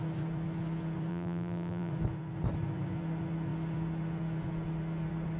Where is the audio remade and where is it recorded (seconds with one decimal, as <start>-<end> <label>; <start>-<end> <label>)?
0.0-1.1 recorded; 1.1-1.9 remade; 1.9-5.4 recorded